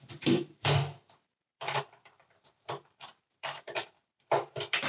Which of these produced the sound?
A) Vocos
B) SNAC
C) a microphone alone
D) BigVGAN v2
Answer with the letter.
D